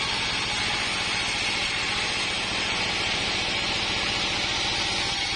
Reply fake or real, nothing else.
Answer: real